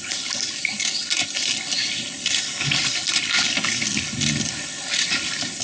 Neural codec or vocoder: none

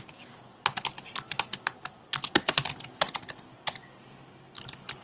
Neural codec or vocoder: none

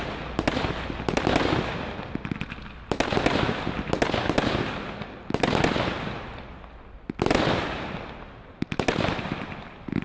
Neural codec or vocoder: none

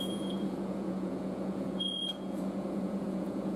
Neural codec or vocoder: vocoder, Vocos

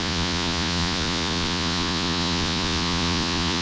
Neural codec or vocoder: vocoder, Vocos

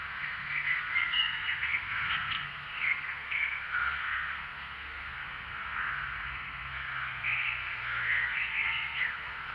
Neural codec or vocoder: codec, SNAC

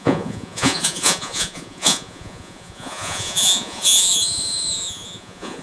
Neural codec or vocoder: vocoder, Vocos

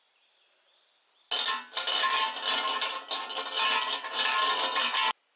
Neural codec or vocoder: none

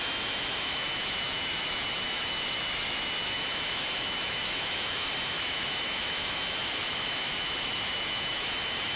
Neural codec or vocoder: autoencoder, DAC-VAE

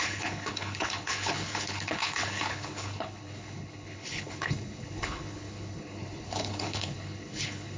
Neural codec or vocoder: codec, HILCodec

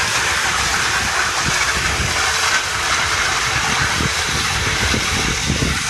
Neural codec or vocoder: none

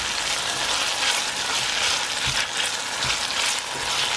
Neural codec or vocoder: none